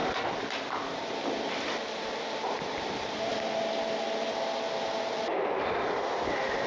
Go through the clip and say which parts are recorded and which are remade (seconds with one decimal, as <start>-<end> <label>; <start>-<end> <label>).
0.0-3.3 remade; 3.3-6.2 recorded; 6.2-6.7 remade